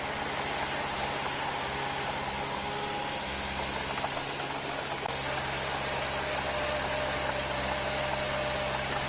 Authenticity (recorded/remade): recorded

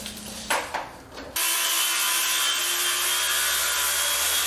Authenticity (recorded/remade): recorded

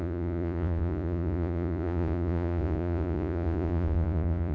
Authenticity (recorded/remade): remade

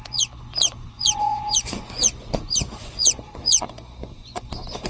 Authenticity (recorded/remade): remade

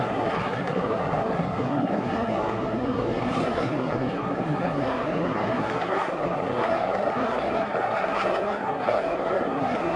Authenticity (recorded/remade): remade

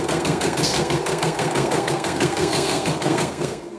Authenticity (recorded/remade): remade